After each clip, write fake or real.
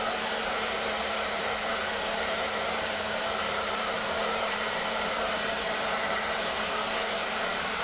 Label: fake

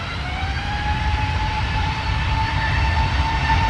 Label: fake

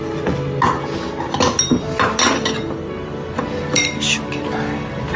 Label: real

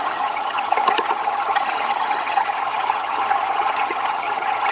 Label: fake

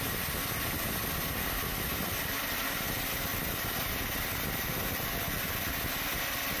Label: real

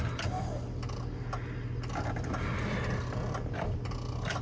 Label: real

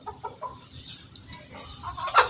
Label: real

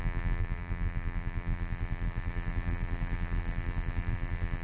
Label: fake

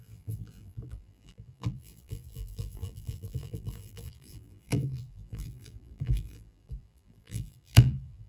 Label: fake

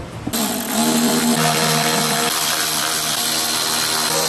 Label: real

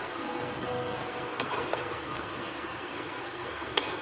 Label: fake